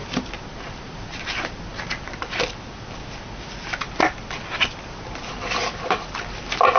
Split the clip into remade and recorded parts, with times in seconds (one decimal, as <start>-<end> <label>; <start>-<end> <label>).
0.0-6.8 recorded